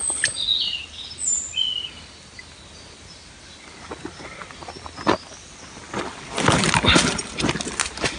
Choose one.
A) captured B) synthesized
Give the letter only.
A